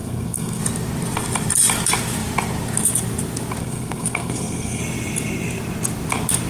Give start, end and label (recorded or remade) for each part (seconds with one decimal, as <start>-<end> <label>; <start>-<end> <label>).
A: 0.0-0.6 remade; 0.6-3.6 recorded; 3.6-4.8 remade; 4.8-6.5 recorded